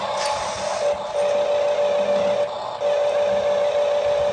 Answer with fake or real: real